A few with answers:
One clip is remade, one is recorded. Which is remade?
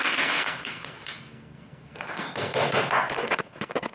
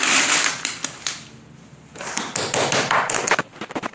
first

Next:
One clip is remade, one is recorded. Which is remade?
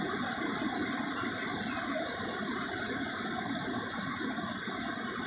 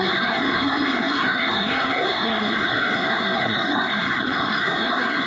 second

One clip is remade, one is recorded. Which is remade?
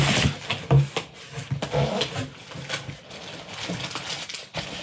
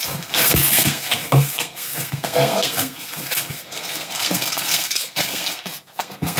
second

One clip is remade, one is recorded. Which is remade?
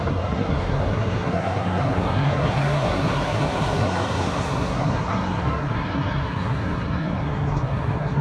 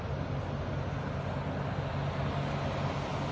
first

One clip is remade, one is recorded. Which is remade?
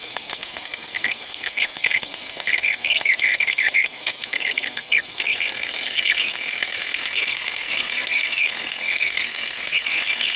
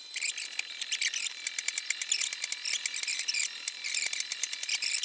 first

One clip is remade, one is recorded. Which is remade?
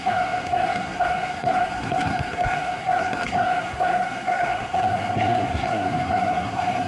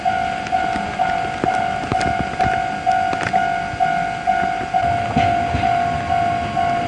first